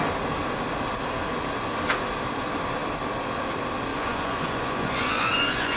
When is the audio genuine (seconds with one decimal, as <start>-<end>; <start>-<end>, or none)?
0.0-3.9